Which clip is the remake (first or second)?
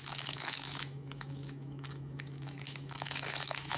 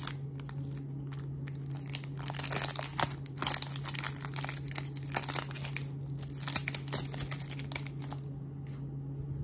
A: first